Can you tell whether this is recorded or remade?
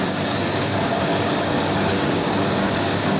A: remade